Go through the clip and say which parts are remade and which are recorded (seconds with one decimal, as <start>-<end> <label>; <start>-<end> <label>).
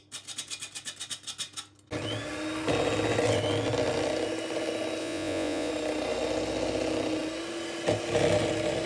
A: 0.0-5.0 recorded; 5.0-5.7 remade; 5.7-8.9 recorded